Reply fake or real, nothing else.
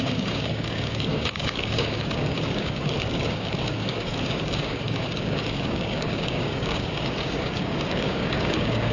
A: fake